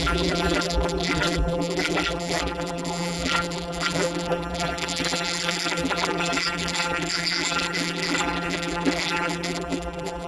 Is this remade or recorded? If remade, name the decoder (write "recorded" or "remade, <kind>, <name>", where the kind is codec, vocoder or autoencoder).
remade, vocoder, BigVGAN v2